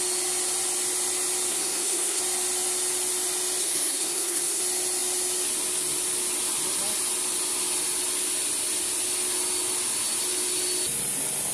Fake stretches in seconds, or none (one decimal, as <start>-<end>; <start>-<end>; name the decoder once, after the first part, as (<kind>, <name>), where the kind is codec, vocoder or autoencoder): 1.5-2.2 (codec, SNAC); 3.6-4.6